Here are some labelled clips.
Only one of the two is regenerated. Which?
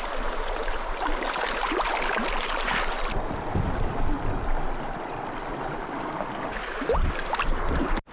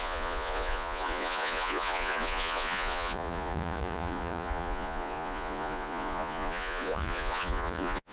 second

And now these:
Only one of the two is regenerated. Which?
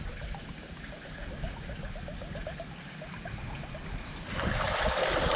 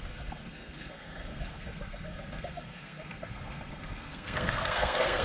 second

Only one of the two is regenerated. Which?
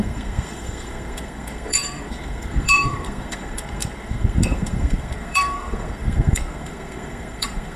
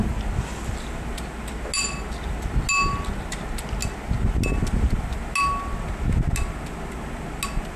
first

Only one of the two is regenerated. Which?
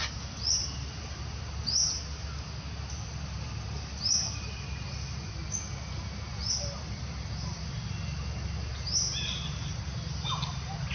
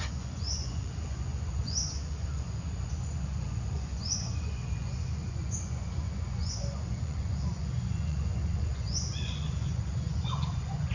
second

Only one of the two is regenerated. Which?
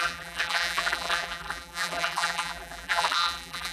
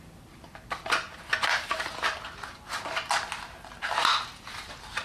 first